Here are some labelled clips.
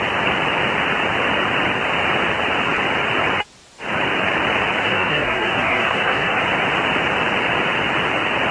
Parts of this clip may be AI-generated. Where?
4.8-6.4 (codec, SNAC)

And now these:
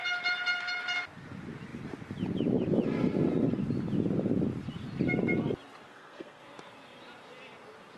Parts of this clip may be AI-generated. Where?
5.9-6.4 (codec, SNAC)

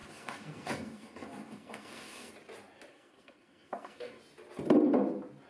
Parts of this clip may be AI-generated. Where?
0.0-2.3 (codec, SNAC); 2.9-4.2